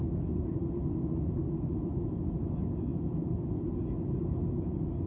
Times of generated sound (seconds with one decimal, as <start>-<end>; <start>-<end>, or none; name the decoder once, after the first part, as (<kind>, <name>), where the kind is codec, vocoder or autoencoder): none